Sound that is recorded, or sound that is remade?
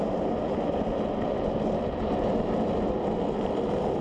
recorded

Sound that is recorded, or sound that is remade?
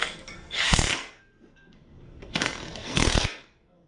remade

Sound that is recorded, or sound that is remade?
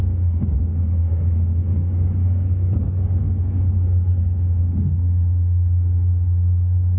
remade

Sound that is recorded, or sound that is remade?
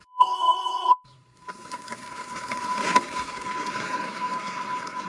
remade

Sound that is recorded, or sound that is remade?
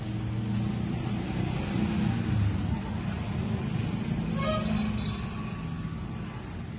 recorded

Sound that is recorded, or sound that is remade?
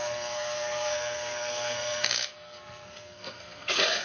remade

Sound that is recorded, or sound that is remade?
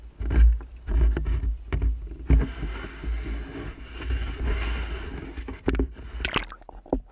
recorded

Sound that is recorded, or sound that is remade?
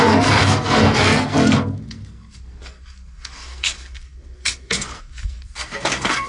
remade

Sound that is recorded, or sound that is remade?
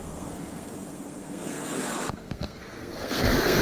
remade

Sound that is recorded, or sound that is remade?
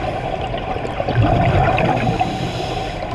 recorded